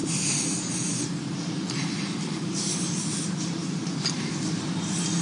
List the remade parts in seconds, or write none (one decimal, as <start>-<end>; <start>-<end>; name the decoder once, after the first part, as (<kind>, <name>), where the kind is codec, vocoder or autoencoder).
0.0-3.1 (vocoder, BigVGAN v2); 3.6-4.3